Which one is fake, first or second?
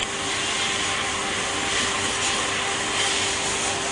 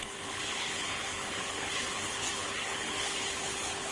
second